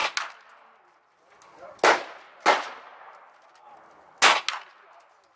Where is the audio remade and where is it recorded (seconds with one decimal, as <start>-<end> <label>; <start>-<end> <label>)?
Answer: 0.0-5.4 recorded